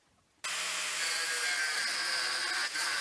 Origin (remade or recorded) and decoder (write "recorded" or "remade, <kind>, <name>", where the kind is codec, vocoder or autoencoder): recorded